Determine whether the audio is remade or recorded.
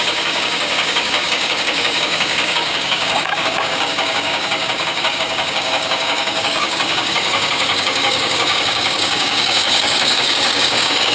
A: remade